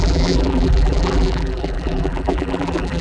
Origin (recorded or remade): remade